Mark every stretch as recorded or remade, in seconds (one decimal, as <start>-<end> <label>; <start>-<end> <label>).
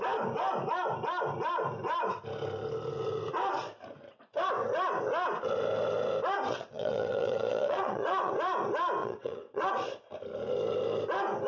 0.0-6.5 recorded; 6.5-8.3 remade; 8.3-9.0 recorded; 9.0-9.7 remade; 9.7-11.5 recorded